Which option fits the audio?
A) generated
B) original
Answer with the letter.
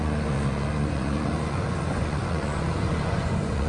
A